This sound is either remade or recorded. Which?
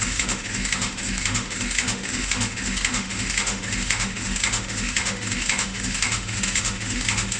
remade